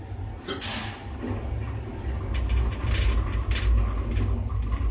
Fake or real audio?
real